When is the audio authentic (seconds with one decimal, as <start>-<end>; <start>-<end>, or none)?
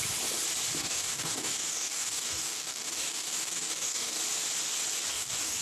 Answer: 0.0-0.8; 4.2-5.1